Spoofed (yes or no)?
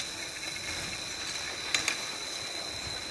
no